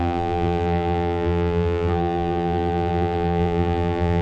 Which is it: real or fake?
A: fake